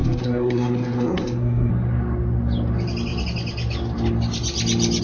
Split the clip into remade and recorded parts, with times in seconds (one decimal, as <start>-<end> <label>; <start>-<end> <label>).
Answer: 0.0-1.7 remade; 1.7-5.0 recorded